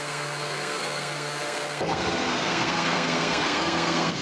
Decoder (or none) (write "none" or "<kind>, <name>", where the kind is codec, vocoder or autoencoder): codec, SNAC